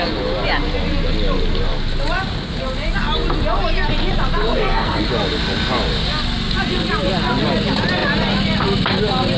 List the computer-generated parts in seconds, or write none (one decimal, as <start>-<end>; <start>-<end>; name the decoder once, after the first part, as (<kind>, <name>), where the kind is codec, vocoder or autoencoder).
4.4-5.1 (codec, SNAC)